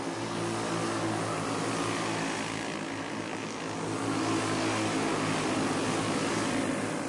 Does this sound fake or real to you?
real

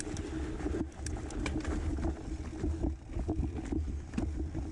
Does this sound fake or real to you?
real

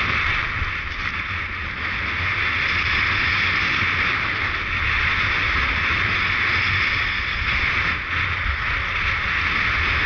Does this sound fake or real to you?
real